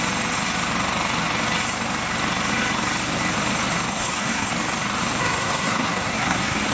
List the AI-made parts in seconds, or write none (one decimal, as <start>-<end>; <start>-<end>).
3.9-4.5; 5.2-6.7